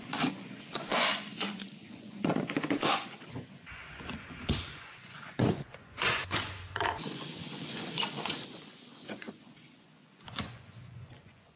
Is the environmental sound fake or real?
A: fake